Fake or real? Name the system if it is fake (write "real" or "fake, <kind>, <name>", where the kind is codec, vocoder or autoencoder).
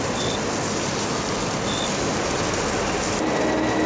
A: real